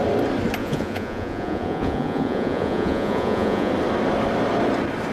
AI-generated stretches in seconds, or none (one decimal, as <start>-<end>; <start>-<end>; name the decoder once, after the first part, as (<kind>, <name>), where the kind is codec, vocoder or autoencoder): 0.6-3.7 (vocoder, Vocos)